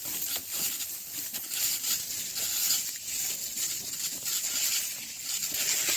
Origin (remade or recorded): recorded